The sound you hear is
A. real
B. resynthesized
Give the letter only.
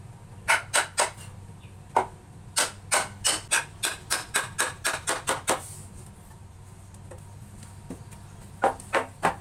A